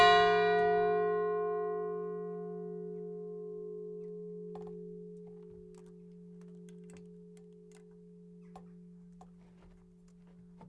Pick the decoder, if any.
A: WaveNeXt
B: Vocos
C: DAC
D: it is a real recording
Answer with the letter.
D